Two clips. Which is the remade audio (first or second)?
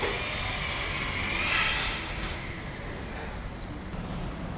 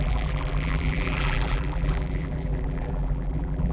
second